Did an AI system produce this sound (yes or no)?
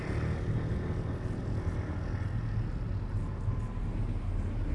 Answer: no